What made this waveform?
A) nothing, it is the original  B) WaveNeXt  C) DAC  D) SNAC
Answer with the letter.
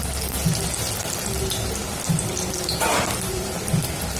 A